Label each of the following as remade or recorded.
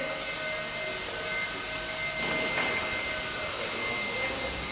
recorded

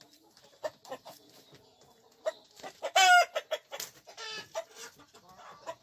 recorded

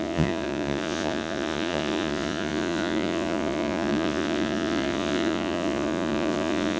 remade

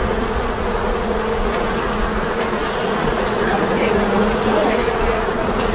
remade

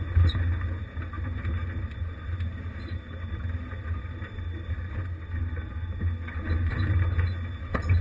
recorded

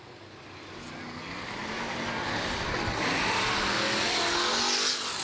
recorded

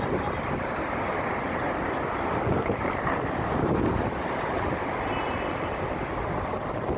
recorded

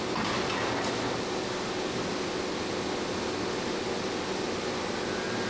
recorded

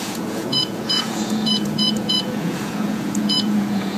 remade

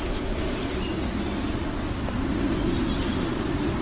recorded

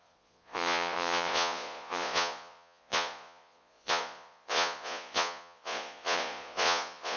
remade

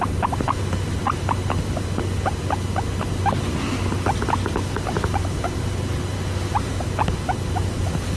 recorded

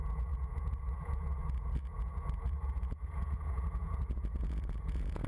remade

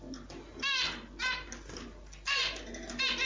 recorded